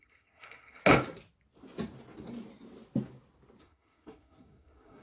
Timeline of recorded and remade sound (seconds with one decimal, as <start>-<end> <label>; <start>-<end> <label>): 0.0-0.8 remade; 0.8-3.6 recorded; 3.6-5.0 remade